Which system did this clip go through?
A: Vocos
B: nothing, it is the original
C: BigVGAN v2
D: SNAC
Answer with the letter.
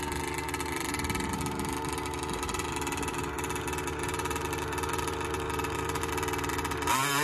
B